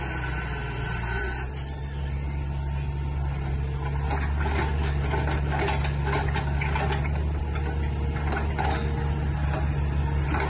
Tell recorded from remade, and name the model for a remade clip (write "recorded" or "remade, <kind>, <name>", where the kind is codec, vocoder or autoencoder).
recorded